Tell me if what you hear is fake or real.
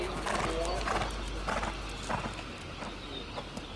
real